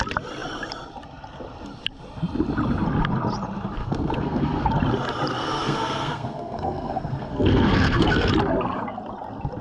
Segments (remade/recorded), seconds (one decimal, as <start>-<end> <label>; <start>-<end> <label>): 0.0-3.8 recorded; 3.8-4.7 remade; 4.7-5.3 recorded; 5.3-8.3 remade; 8.3-9.6 recorded